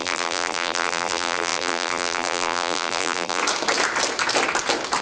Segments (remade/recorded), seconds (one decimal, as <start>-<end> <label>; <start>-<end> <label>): 0.0-3.4 remade; 3.4-5.0 recorded

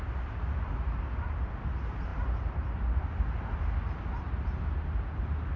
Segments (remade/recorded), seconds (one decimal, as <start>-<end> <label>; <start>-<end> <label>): 0.0-5.6 recorded

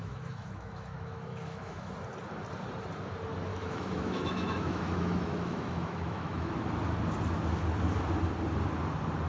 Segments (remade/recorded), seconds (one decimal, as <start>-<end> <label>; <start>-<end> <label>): 0.0-1.9 remade; 1.9-3.5 recorded; 3.5-6.5 remade; 6.5-9.3 recorded

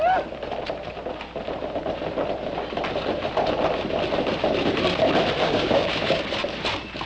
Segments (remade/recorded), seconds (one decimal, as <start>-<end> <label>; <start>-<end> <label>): 0.0-5.4 recorded; 5.4-6.2 remade; 6.2-7.1 recorded